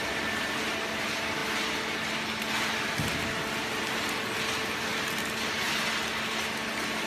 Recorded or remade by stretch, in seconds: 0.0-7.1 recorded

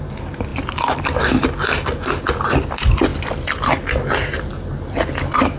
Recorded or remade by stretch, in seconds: 0.0-0.5 recorded; 0.5-1.2 remade; 1.2-3.1 recorded; 3.1-5.6 remade